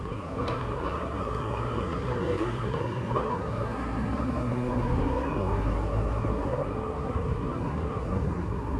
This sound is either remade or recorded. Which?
remade